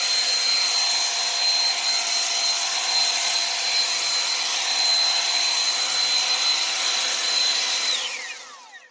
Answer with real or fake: real